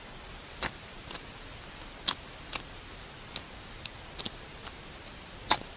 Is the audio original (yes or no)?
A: yes